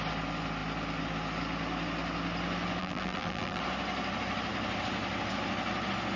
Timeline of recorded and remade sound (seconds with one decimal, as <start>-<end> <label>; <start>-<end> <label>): 0.0-2.8 recorded; 2.8-3.6 remade; 3.6-6.2 recorded